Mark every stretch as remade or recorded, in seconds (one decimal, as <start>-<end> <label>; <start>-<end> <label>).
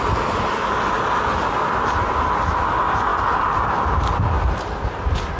0.0-5.4 recorded